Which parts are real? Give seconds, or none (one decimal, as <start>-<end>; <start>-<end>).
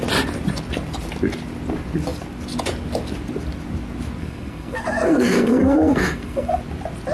0.0-4.2; 6.6-7.1